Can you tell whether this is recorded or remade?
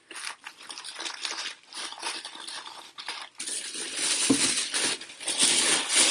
recorded